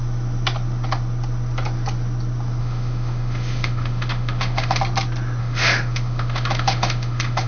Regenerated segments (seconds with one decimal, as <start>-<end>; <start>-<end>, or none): 2.6-4.8; 5.4-7.5